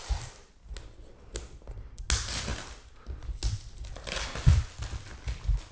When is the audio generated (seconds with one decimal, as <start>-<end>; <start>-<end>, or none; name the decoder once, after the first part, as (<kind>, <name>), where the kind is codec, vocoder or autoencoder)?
none

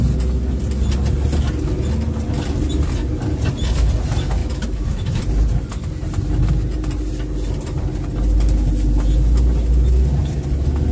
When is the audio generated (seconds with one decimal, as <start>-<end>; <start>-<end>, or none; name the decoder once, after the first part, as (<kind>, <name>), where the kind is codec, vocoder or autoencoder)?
4.4-5.2 (autoencoder, DAC-VAE)

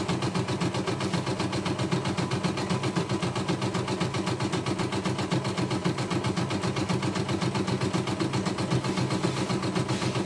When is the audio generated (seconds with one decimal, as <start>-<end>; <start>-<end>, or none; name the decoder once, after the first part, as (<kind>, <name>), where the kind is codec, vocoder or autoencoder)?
none

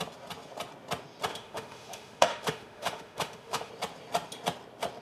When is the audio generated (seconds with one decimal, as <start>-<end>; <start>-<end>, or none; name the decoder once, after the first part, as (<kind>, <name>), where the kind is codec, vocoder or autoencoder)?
1.3-3.7 (autoencoder, DAC-VAE)

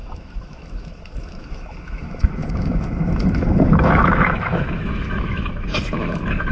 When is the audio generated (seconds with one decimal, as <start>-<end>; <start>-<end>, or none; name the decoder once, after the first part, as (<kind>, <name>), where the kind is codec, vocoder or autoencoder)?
0.0-6.5 (autoencoder, DAC-VAE)

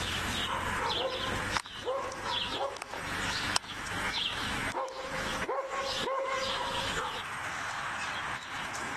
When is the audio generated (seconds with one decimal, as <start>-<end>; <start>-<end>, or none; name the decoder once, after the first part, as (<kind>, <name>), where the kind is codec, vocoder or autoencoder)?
0.0-0.4 (autoencoder, DAC-VAE); 1.4-9.0

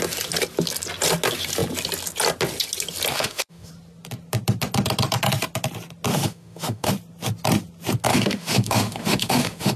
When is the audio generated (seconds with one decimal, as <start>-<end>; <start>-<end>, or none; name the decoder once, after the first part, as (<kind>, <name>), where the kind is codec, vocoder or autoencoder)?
3.1-3.7 (autoencoder, DAC-VAE); 6.1-6.9; 8.1-9.8